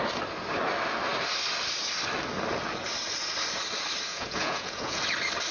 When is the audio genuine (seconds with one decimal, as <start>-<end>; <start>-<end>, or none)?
0.0-4.1; 5.0-5.5